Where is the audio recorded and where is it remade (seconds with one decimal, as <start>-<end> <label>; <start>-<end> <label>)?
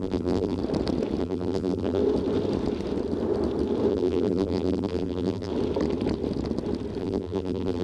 0.0-0.6 remade; 0.6-1.2 recorded; 1.2-2.0 remade; 2.0-3.9 recorded; 3.9-5.5 remade; 5.5-7.0 recorded; 7.0-7.8 remade